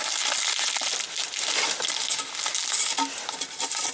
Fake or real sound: real